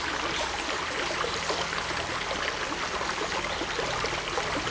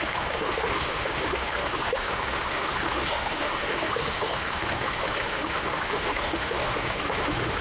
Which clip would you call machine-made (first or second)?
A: second